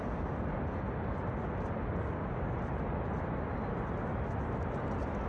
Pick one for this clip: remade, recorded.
recorded